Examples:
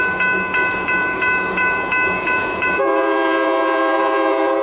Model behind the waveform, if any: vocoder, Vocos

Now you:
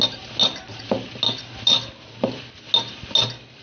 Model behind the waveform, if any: none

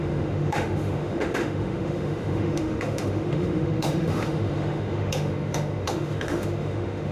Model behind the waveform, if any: autoencoder, DAC-VAE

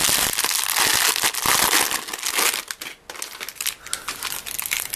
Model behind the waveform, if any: none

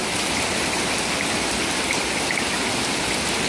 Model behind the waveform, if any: none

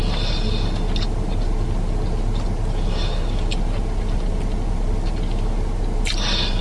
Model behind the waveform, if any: none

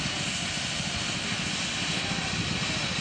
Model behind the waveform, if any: none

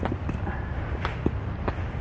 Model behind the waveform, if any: none